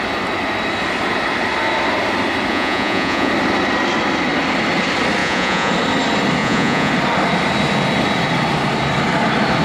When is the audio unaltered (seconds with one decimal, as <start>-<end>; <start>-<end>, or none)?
0.0-2.5; 3.3-5.2; 5.7-6.4; 6.9-9.6